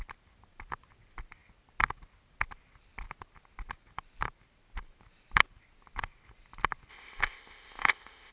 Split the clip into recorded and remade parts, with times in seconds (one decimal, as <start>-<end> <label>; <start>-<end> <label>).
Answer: 0.0-6.9 recorded; 6.9-8.3 remade

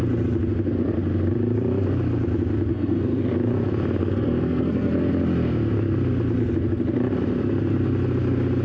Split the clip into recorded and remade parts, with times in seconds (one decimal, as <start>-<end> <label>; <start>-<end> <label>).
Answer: 0.0-2.7 recorded; 2.7-3.2 remade; 3.2-4.0 recorded; 4.0-5.1 remade; 5.1-8.6 recorded

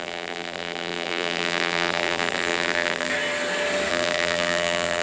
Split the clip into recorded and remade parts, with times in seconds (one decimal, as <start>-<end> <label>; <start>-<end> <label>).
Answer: 0.0-3.1 remade; 3.1-3.9 recorded; 3.9-5.0 remade

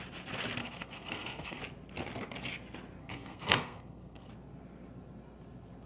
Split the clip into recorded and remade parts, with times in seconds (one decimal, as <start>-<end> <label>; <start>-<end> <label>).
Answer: 0.0-0.6 recorded; 0.6-1.6 remade; 1.6-3.0 recorded; 3.0-4.3 remade; 4.3-5.9 recorded